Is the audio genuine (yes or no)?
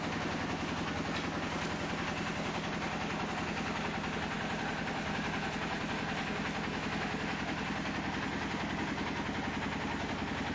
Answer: yes